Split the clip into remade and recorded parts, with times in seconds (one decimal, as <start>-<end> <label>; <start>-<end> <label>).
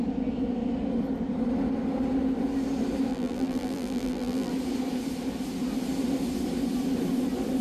0.0-3.1 recorded; 3.1-4.5 remade; 4.5-7.6 recorded